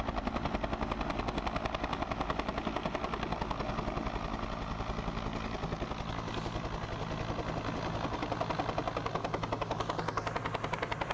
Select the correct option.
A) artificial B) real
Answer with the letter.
B